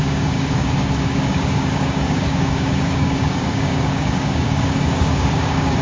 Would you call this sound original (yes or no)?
no